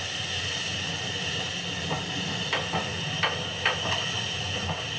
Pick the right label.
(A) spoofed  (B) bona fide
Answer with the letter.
B